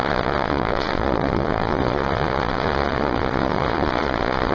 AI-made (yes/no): yes